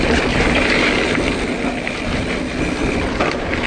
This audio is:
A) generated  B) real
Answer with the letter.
B